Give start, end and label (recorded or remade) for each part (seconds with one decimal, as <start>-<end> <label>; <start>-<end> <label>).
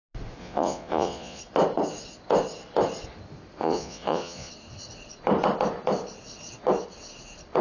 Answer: 0.0-0.4 recorded; 0.4-1.4 remade; 1.4-3.6 recorded; 3.6-4.5 remade; 4.5-7.6 recorded